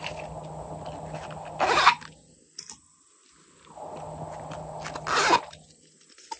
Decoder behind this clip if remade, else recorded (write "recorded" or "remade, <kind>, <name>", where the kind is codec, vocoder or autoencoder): recorded